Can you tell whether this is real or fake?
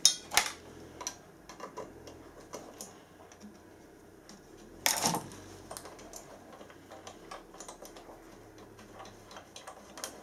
real